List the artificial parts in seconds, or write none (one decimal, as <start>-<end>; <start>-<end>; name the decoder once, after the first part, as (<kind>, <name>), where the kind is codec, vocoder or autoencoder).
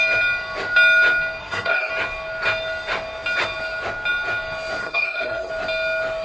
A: 1.4-1.9 (codec, SNAC); 4.8-5.5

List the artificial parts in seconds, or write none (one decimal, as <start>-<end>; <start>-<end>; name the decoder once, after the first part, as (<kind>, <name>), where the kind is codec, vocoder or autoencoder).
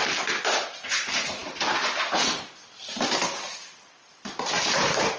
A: none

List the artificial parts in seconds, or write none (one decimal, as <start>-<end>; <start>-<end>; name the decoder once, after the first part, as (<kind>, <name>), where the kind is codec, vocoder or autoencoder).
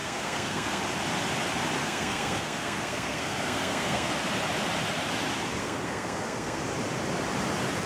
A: 0.0-0.8 (codec, SNAC); 1.8-4.1; 5.6-6.6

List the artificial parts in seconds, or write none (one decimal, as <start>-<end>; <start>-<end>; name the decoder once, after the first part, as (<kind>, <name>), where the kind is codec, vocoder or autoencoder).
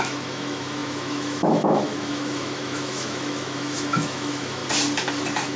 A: 0.0-4.6 (autoencoder, DAC-VAE)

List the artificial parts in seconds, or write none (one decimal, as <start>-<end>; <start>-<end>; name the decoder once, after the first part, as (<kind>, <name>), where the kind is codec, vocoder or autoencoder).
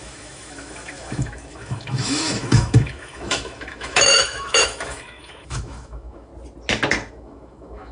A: 0.0-6.3 (autoencoder, DAC-VAE); 7.1-7.9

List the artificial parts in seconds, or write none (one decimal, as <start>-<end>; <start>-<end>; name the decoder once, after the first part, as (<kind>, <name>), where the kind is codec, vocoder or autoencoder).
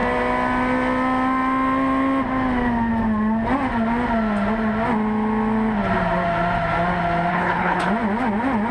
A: 7.3-7.9 (codec, HILCodec)